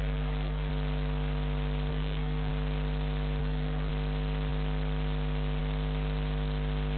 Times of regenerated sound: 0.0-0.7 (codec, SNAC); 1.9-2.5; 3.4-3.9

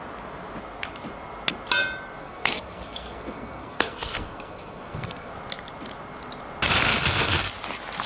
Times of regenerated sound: 2.2-5.3 (codec, SNAC); 6.9-7.5